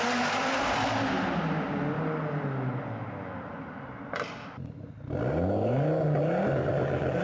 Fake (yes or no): no